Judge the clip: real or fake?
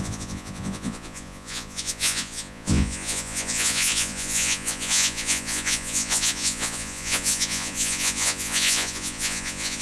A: fake